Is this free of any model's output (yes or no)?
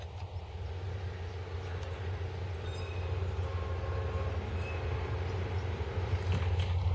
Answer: yes